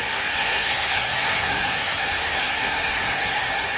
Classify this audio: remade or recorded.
remade